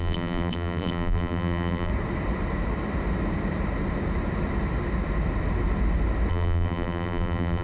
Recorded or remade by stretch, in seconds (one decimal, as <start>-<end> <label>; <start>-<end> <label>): 0.0-1.9 remade; 1.9-6.3 recorded; 6.3-7.6 remade